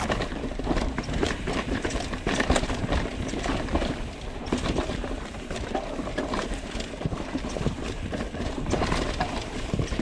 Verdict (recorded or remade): remade